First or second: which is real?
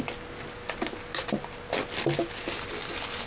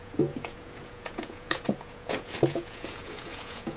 first